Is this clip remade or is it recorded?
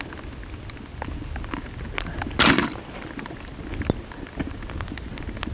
recorded